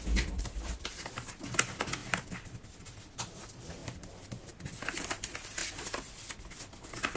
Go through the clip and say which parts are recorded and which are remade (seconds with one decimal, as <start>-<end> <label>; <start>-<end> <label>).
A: 0.0-2.0 recorded; 2.0-2.6 remade; 2.6-3.8 recorded; 3.8-4.5 remade; 4.5-5.6 recorded; 5.6-6.1 remade; 6.1-7.2 recorded